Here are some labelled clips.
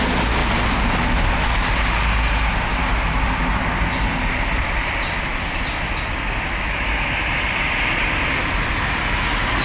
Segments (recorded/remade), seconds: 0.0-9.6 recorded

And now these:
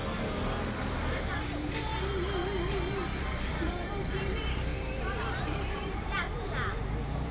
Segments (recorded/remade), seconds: 0.0-0.8 recorded; 0.8-1.9 remade; 1.9-3.3 recorded; 3.3-4.7 remade; 4.7-5.4 recorded; 5.4-7.3 remade

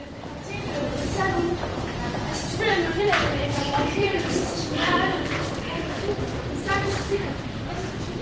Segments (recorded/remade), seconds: 0.0-8.2 remade

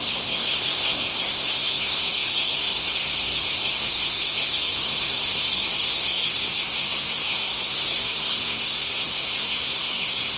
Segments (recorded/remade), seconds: 0.0-10.4 remade

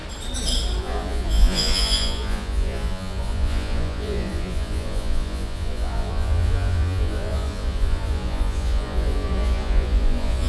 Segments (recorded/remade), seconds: 0.0-0.8 recorded; 0.8-10.5 remade

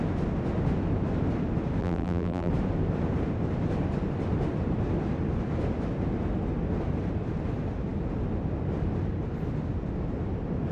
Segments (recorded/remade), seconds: 0.0-1.8 recorded; 1.8-2.5 remade; 2.5-10.7 recorded

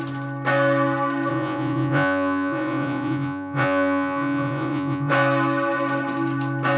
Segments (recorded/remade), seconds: 0.0-1.3 recorded; 1.3-5.1 remade; 5.1-6.8 recorded